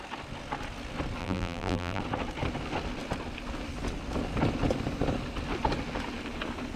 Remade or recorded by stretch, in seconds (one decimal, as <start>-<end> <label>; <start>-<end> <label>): 0.0-1.2 recorded; 1.2-2.0 remade; 2.0-6.8 recorded